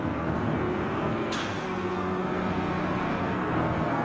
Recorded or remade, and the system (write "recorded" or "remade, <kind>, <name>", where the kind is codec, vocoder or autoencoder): remade, codec, SNAC